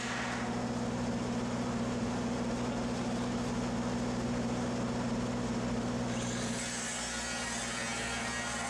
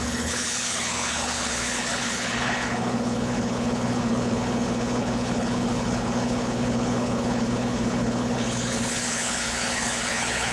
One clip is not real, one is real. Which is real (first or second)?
first